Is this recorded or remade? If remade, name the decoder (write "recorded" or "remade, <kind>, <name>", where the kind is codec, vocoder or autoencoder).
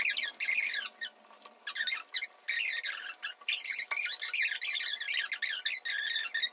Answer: recorded